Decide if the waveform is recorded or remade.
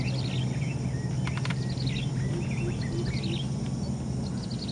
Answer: recorded